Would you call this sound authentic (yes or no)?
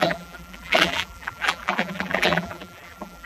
no